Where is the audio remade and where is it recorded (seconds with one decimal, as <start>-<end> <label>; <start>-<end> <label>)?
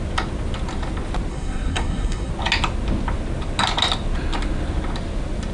0.0-1.3 recorded; 1.3-2.3 remade; 2.3-5.5 recorded